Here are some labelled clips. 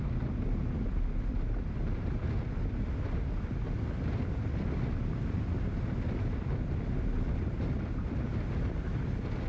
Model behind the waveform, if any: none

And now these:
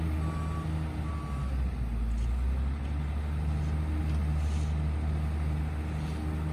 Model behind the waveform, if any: none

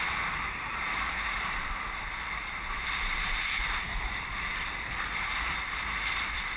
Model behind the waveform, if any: vocoder, BigVGAN v2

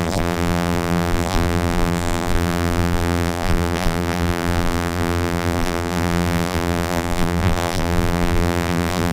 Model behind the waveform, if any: vocoder, BigVGAN v2